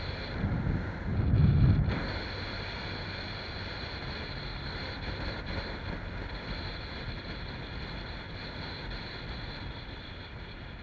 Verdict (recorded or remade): recorded